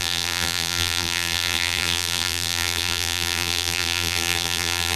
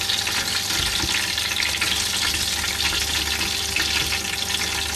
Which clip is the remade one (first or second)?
first